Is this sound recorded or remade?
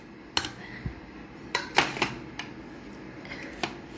recorded